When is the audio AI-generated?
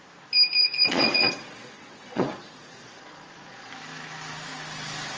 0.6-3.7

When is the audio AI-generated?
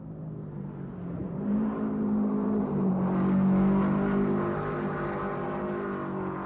1.2-2.9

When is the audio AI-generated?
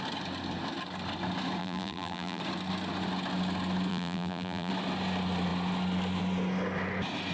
1.6-2.4; 3.9-4.7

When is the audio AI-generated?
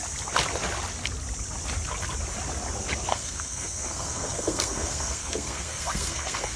3.1-6.6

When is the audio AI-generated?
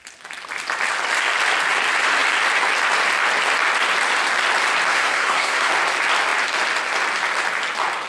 4.9-5.7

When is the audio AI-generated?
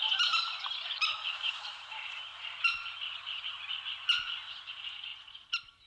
0.0-2.3; 4.5-5.1